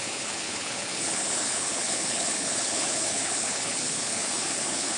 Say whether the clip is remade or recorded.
remade